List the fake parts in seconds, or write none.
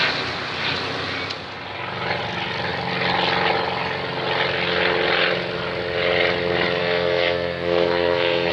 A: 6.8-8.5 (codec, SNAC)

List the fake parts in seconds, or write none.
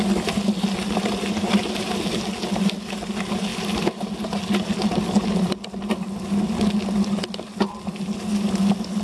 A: none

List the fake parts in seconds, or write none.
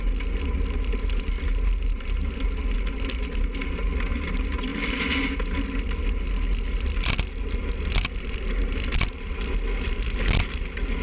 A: none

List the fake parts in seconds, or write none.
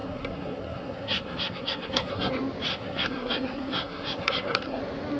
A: 0.0-2.3 (codec, SNAC); 2.7-4.8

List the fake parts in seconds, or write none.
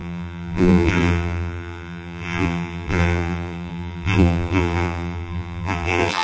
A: 0.0-6.2 (vocoder, BigVGAN v2)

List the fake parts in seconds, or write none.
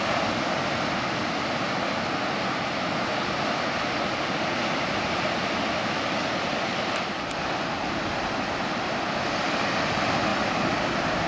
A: none